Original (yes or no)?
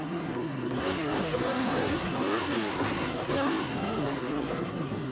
no